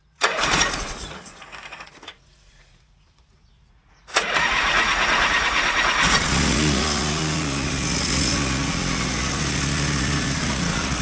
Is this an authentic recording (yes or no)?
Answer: no